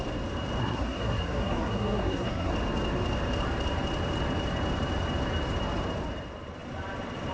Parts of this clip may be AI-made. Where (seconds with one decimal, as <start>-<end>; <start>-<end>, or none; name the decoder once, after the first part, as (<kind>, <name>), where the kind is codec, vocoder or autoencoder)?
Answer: 0.6-2.5 (codec, SNAC)